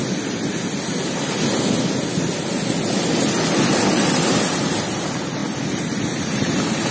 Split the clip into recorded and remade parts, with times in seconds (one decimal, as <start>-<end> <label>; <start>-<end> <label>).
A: 0.0-4.1 recorded; 4.1-5.4 remade; 5.4-6.0 recorded; 6.0-6.9 remade